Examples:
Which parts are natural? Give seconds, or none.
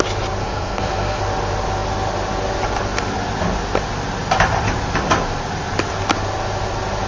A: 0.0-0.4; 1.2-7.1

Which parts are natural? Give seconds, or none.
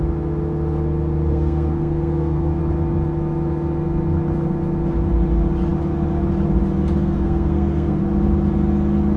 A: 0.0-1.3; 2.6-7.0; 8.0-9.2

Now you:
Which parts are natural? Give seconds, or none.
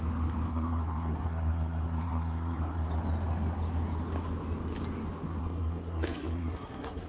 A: 0.0-0.5; 2.9-5.4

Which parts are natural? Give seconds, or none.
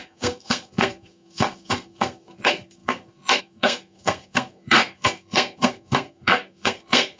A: none